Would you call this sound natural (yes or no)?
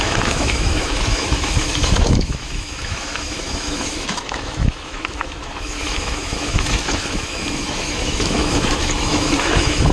no